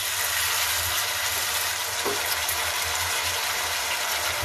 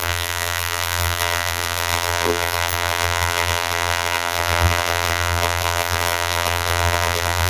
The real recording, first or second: first